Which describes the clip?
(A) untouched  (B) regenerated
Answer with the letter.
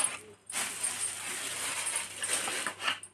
A